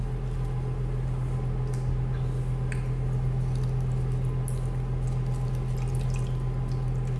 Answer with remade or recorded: recorded